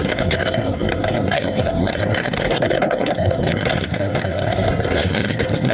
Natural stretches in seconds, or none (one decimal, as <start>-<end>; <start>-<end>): none